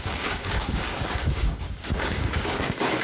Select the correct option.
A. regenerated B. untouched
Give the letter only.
A